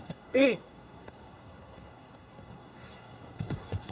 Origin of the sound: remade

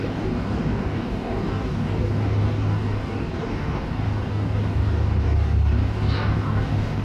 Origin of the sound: remade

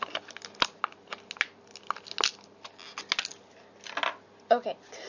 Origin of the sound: recorded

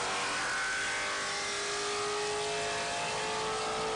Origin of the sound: recorded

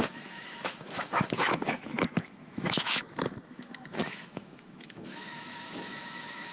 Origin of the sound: remade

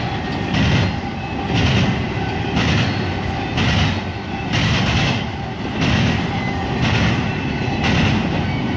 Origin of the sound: recorded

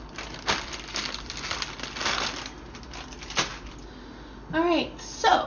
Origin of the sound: recorded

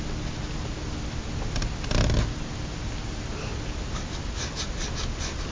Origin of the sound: recorded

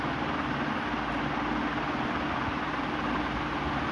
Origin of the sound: recorded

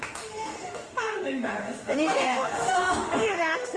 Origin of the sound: remade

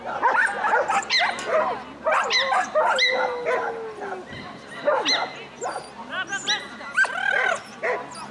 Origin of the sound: recorded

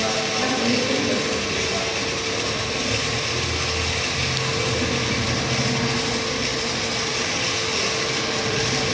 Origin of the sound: recorded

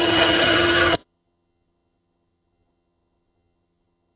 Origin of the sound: remade